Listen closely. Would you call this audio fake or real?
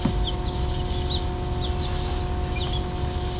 real